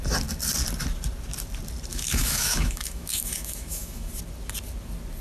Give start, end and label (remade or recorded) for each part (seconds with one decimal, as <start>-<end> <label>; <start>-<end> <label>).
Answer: 0.0-1.9 recorded; 1.9-4.1 remade; 4.1-5.2 recorded